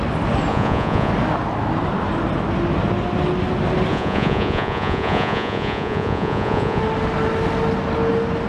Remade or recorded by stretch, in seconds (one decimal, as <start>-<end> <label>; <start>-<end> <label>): 0.0-0.5 recorded; 0.5-1.1 remade; 1.1-3.9 recorded; 3.9-6.8 remade; 6.8-8.5 recorded